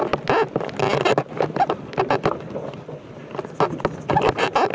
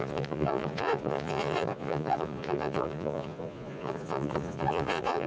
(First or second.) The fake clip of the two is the second